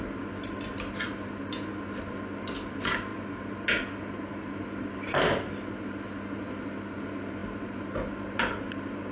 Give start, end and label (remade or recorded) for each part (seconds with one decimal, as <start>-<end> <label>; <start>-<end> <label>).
0.0-9.1 recorded